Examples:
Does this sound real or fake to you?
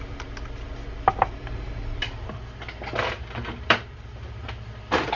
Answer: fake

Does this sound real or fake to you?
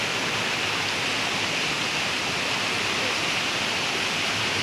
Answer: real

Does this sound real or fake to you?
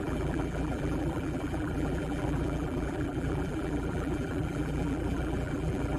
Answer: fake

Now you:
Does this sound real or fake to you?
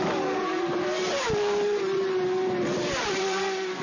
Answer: fake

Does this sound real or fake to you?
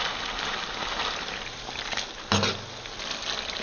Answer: real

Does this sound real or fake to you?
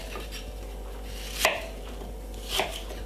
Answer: fake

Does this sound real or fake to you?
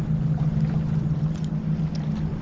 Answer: real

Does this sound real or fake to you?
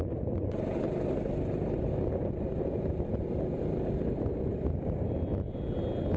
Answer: real